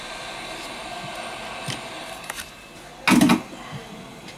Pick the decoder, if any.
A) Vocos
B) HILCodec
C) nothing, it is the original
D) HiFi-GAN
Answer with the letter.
C